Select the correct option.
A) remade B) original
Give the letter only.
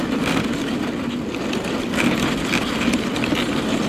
B